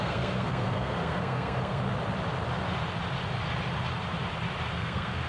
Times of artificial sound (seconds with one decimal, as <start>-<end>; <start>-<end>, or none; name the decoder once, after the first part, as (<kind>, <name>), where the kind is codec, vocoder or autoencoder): 0.0-1.8 (codec, SNAC); 4.7-5.3